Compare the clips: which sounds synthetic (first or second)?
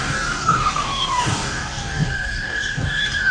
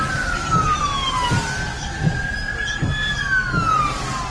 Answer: first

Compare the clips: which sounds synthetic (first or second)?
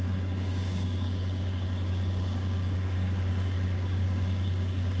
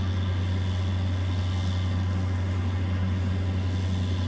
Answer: first